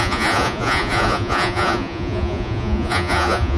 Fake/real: fake